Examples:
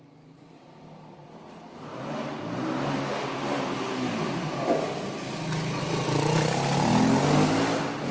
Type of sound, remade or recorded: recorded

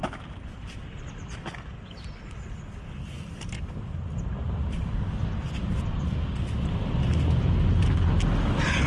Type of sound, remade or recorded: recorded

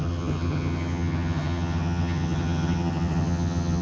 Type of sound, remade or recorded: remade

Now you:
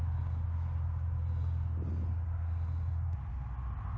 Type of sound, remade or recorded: recorded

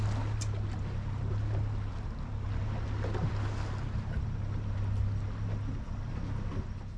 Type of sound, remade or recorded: recorded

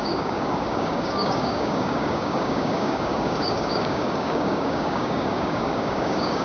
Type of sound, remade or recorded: remade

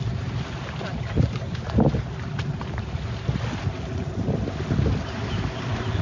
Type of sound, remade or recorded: recorded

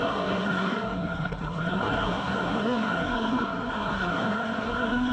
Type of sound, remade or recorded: remade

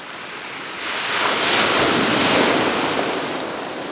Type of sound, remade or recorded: recorded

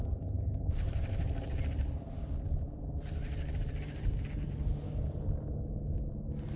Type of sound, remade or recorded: recorded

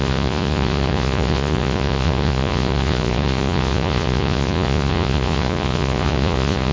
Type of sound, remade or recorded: remade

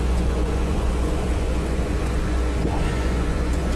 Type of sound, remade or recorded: remade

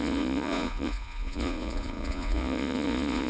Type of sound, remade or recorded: remade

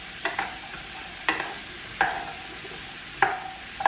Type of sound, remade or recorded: recorded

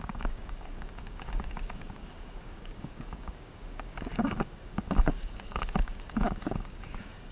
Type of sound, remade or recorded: remade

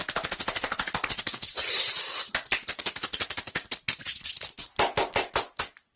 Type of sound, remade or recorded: recorded